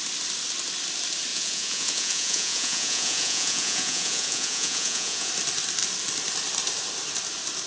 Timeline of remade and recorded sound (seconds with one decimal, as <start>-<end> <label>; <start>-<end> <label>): 0.0-1.3 recorded; 1.3-5.3 remade; 5.3-7.7 recorded